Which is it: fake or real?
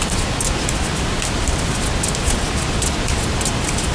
real